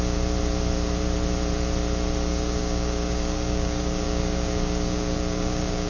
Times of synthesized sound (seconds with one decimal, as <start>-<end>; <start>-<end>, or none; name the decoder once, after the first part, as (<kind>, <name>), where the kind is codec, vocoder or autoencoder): 2.3-5.9 (codec, DAC)